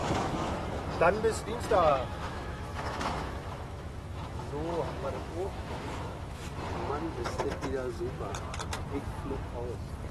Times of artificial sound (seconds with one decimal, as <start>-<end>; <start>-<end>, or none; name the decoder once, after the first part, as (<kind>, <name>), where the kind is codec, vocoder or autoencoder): 0.0-0.8 (autoencoder, DAC-VAE); 1.9-6.4